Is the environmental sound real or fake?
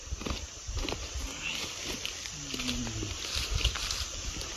real